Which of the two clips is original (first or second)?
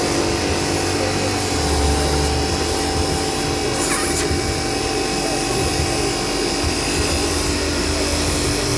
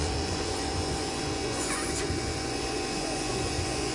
first